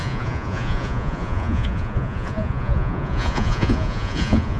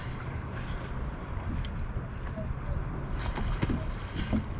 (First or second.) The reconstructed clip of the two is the first